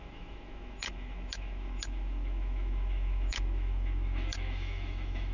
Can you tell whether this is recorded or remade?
remade